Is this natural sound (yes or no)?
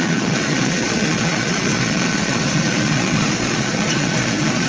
no